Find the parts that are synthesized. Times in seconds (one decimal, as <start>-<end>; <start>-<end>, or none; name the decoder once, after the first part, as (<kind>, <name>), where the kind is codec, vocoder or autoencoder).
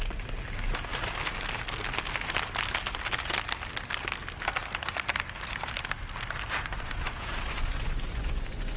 6.7-8.8 (vocoder, Vocos)